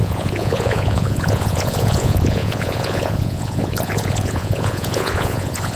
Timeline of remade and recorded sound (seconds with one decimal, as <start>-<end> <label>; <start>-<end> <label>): 0.0-5.8 remade

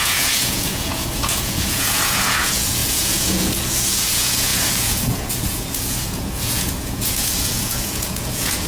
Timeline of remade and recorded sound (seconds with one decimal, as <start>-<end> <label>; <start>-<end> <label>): 0.0-8.7 remade

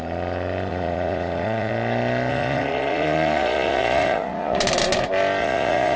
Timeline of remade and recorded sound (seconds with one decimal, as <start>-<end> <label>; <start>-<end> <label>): 0.0-0.7 recorded; 0.7-1.7 remade; 1.7-2.3 recorded; 2.3-4.6 remade; 4.6-5.4 recorded; 5.4-6.0 remade

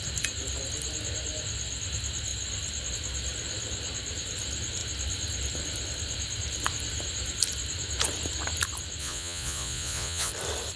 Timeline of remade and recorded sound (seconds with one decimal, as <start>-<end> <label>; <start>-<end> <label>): 0.0-9.0 recorded; 9.0-10.3 remade; 10.3-10.8 recorded

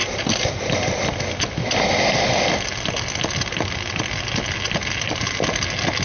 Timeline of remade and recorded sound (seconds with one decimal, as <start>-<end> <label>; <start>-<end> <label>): 0.0-6.0 recorded